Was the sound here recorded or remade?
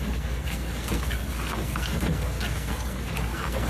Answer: remade